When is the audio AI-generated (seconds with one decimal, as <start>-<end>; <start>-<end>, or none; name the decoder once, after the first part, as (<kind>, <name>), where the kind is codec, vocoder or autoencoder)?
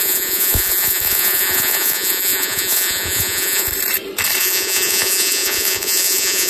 0.0-3.7 (vocoder, Vocos); 4.4-6.5